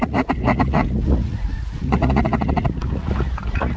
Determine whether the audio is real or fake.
fake